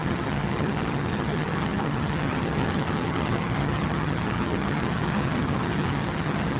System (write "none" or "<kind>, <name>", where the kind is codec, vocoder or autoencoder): vocoder, HiFi-GAN